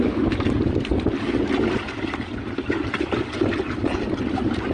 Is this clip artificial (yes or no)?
no